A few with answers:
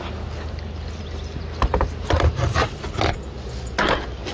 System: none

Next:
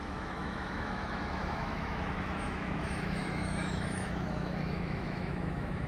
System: autoencoder, DAC-VAE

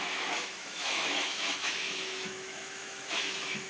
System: autoencoder, DAC-VAE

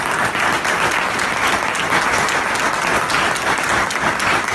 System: none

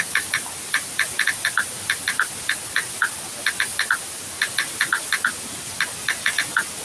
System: none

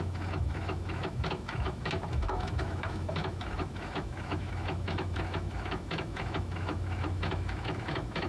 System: autoencoder, DAC-VAE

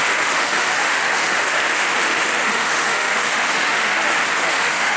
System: autoencoder, DAC-VAE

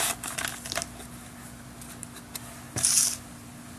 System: none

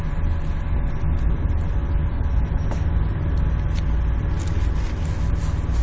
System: none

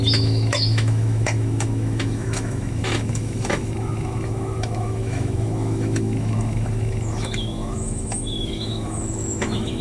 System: autoencoder, DAC-VAE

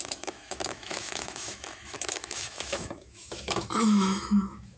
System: autoencoder, DAC-VAE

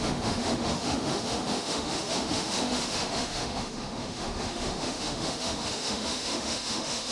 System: autoencoder, DAC-VAE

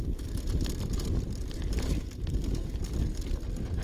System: none